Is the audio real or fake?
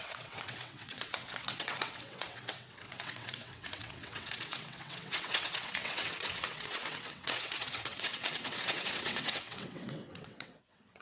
fake